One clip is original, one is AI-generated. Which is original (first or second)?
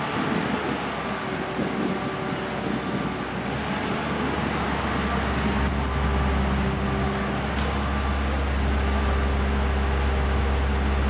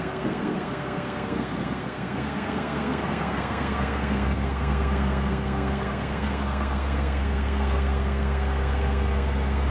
first